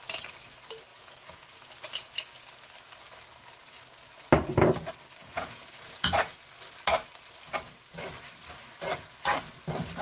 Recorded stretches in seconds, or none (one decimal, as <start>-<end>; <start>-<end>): 0.0-0.9; 1.7-5.2; 6.2-10.0